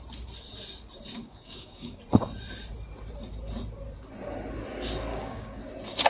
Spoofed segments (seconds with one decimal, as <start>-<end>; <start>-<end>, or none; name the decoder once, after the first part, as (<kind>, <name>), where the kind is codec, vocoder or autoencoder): 1.2-2.0 (codec, DAC); 5.1-5.6